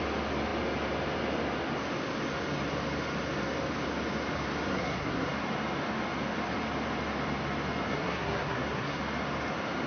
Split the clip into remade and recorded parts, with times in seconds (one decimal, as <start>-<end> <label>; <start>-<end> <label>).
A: 0.0-4.7 recorded; 4.7-5.3 remade; 5.3-7.9 recorded; 7.9-9.0 remade; 9.0-9.9 recorded